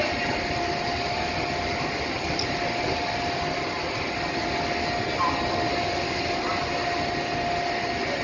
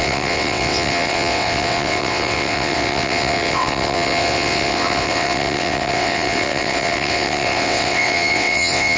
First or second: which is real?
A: first